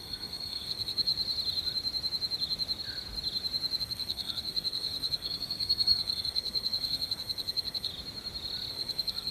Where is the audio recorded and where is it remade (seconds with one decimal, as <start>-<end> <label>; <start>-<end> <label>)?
0.0-1.1 remade; 1.1-3.8 recorded; 3.8-7.9 remade; 7.9-8.7 recorded; 8.7-9.3 remade